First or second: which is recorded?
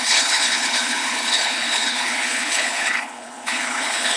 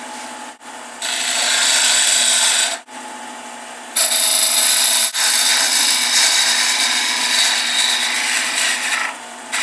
second